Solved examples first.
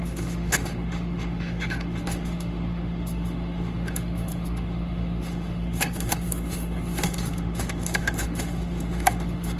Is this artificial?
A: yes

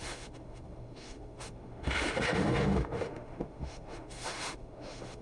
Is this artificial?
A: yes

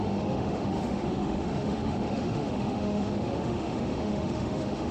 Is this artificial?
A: yes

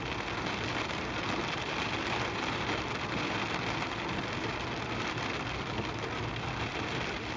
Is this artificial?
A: no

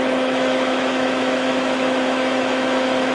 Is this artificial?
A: yes